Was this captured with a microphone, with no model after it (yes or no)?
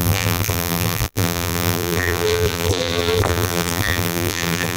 no